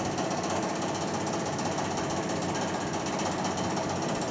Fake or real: real